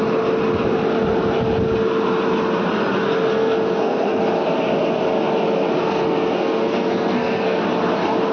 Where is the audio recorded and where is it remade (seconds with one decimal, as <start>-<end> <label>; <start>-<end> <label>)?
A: 0.0-3.3 recorded; 3.3-4.2 remade; 4.2-5.8 recorded; 5.8-7.6 remade; 7.6-8.3 recorded